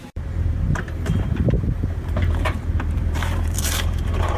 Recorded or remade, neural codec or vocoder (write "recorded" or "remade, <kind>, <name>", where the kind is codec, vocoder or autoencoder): remade, vocoder, BigVGAN v2